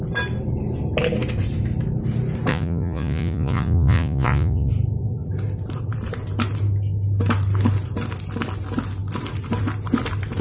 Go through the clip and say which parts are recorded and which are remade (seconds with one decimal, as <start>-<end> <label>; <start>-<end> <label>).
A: 0.0-2.5 recorded; 2.5-4.7 remade; 4.7-10.4 recorded